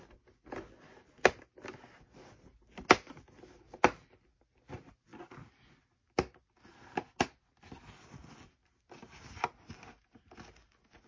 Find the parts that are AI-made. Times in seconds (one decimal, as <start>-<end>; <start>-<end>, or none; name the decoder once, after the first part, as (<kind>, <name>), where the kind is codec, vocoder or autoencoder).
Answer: none